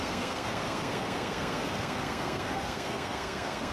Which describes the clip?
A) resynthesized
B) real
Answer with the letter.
A